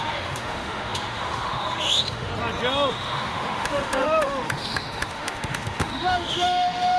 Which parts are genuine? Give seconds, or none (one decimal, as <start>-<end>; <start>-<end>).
2.3-2.9